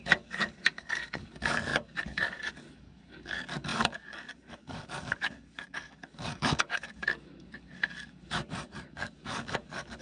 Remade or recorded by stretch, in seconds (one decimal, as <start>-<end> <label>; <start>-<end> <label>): 0.0-10.0 remade